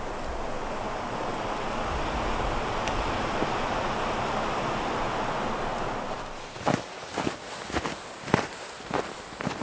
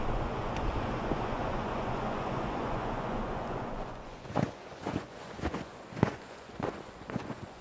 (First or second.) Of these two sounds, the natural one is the first